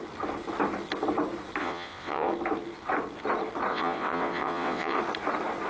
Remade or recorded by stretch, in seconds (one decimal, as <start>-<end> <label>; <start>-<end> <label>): 0.0-1.6 recorded; 1.6-2.3 remade; 2.3-3.7 recorded; 3.7-5.0 remade; 5.0-5.7 recorded